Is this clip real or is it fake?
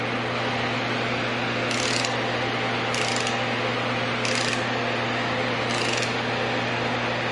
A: real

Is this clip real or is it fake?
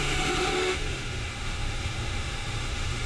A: fake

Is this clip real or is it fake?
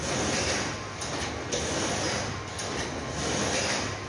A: real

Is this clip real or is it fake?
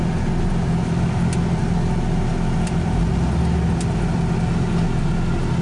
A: real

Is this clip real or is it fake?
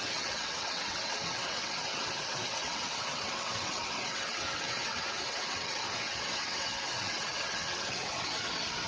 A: fake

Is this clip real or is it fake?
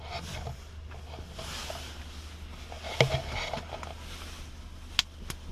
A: real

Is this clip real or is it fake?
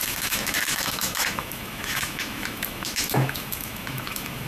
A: fake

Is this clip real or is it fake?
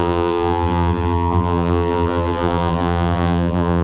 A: fake